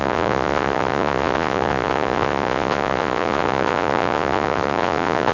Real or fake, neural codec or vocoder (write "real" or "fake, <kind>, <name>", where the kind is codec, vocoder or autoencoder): fake, vocoder, Vocos